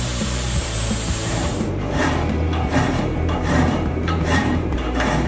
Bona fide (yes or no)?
no